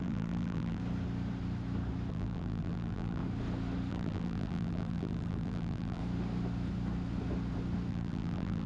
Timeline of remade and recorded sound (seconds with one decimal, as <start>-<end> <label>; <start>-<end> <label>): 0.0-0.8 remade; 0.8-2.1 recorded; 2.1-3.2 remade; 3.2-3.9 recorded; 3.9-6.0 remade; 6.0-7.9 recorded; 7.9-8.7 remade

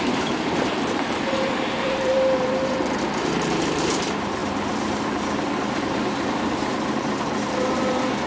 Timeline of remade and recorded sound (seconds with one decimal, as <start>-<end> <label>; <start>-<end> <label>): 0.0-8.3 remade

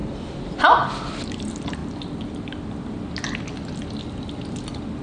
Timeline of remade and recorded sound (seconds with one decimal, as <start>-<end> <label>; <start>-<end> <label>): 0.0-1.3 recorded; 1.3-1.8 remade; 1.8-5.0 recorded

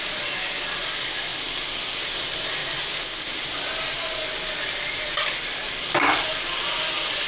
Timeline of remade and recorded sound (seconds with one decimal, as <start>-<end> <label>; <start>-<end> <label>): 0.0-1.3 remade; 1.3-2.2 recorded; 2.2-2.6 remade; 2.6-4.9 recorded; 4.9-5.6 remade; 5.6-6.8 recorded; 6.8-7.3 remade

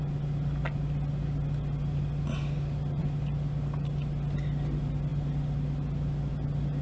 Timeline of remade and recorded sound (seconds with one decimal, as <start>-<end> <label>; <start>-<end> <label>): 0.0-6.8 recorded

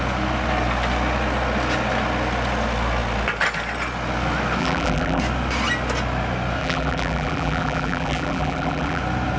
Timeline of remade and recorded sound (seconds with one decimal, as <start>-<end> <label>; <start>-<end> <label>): 0.0-4.6 recorded; 4.6-5.2 remade; 5.2-6.6 recorded; 6.6-9.0 remade; 9.0-9.4 recorded